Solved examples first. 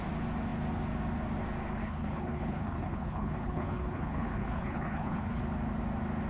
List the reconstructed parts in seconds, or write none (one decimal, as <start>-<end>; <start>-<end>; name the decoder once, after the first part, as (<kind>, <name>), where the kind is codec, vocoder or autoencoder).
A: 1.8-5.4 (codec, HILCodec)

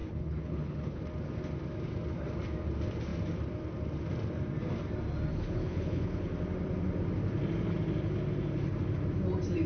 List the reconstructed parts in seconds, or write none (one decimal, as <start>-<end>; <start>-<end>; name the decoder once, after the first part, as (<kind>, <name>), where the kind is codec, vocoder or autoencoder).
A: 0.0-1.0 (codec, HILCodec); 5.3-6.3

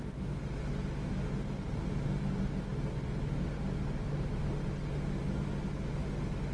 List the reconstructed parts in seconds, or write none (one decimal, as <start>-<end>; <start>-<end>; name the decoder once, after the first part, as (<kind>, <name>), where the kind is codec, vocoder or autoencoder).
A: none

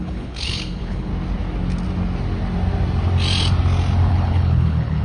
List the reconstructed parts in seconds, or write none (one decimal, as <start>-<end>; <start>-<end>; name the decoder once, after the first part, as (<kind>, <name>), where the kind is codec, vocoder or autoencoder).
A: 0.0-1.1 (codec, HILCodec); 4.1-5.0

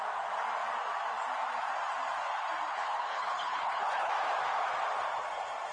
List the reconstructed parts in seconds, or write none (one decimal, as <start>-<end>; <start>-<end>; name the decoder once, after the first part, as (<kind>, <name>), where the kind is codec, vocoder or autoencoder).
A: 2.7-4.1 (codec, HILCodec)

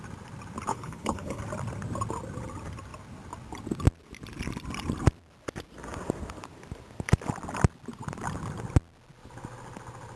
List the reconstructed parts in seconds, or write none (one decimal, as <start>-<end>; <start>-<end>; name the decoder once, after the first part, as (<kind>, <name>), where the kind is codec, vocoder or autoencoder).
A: 0.7-1.4 (codec, HILCodec)